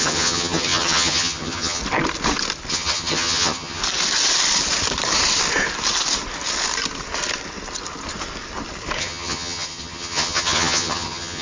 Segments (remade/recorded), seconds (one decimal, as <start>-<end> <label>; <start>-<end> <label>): 0.0-1.8 remade; 1.8-2.7 recorded; 2.7-3.8 remade; 3.8-9.0 recorded; 9.0-11.4 remade